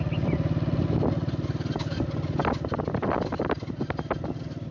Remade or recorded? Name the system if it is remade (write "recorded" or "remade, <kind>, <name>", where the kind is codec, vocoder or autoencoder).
recorded